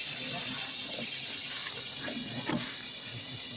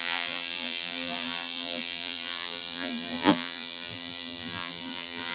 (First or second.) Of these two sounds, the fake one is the second